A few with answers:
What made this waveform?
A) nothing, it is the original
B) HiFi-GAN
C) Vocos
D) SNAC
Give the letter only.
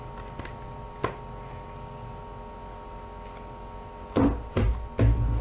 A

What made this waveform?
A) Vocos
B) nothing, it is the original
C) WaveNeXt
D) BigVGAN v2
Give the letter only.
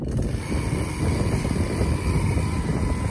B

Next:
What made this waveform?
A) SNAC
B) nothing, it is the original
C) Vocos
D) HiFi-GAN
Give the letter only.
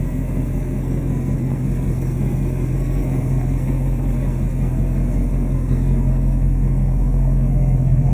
A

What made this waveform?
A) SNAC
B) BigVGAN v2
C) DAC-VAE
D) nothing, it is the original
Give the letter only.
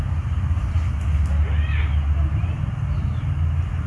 D